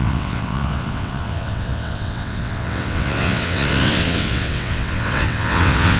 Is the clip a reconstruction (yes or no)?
yes